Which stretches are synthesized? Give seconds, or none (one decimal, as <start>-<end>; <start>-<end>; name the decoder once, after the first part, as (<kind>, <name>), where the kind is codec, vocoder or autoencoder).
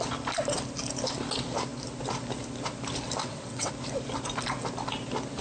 3.2-3.7 (vocoder, WaveNeXt)